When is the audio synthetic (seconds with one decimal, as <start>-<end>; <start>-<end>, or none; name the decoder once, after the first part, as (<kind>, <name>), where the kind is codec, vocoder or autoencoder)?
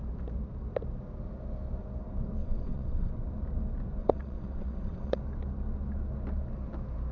2.4-3.1 (vocoder, WaveNeXt); 4.0-5.2